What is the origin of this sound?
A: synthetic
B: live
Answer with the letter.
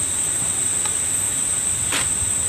B